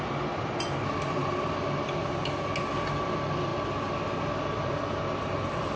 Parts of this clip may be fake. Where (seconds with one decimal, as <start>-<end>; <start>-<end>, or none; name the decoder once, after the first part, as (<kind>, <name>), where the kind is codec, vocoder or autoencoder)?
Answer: none

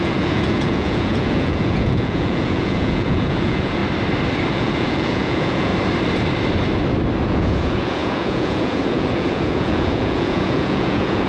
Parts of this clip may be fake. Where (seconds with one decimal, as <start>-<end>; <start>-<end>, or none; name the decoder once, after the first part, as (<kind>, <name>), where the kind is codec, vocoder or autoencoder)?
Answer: 0.0-3.8 (vocoder, Vocos); 4.5-5.7; 7.3-11.3

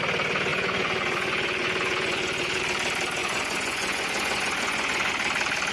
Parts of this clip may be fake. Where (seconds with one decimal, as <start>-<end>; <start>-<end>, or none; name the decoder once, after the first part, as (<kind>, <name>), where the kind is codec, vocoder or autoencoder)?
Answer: 0.5-2.6 (vocoder, Vocos); 3.2-5.1

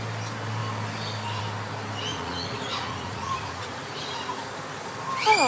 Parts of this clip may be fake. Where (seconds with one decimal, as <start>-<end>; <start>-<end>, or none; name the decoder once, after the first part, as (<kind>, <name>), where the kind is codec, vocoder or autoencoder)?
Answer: 2.1-4.4 (vocoder, Vocos)

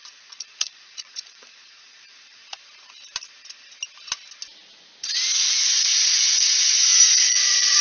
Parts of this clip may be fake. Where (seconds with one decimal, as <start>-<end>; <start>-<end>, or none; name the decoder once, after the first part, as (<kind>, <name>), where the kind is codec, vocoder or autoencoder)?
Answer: 0.0-2.4 (vocoder, Vocos); 5.5-7.8

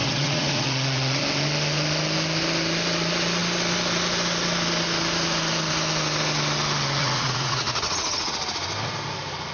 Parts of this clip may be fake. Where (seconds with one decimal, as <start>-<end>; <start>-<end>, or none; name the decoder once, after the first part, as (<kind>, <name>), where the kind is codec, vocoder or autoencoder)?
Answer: 0.0-1.2 (vocoder, Vocos); 7.0-8.3

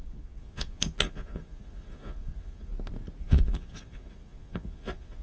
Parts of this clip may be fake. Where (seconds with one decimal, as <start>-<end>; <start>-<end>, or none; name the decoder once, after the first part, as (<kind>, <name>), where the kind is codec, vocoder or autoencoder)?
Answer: 0.0-2.7 (vocoder, Vocos); 3.2-5.2

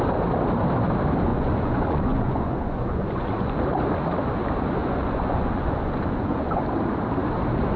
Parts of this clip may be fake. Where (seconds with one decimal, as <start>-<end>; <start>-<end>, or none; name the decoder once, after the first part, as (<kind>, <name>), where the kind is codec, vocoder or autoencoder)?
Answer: 1.3-3.6 (vocoder, Vocos); 4.8-6.6